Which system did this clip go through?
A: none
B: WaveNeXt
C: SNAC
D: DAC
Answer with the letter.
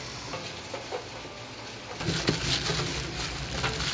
A